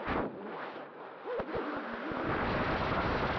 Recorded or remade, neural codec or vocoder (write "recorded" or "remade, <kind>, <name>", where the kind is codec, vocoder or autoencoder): recorded